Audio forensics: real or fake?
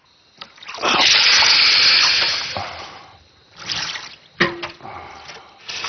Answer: real